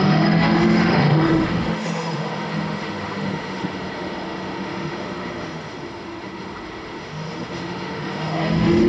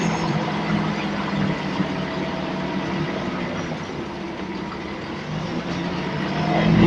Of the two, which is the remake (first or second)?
first